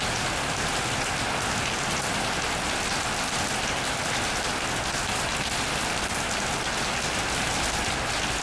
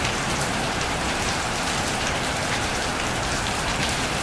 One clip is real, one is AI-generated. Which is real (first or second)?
first